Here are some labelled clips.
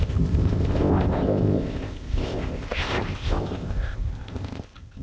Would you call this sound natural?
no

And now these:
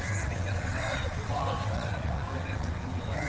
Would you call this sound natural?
no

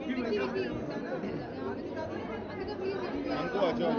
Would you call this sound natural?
yes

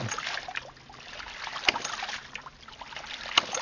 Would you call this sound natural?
yes